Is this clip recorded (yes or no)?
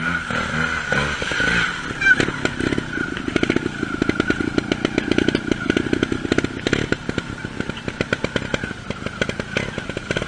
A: yes